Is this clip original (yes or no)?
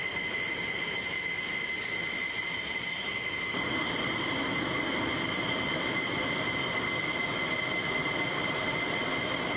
yes